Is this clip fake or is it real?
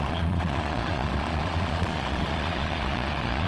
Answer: fake